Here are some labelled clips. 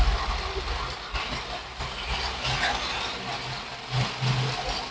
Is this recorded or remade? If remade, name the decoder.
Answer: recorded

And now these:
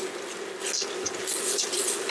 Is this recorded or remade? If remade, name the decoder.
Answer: recorded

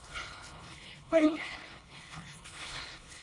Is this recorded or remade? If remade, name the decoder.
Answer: remade, codec, HILCodec